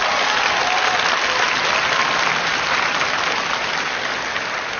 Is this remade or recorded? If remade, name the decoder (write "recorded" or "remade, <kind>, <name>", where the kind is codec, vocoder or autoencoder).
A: recorded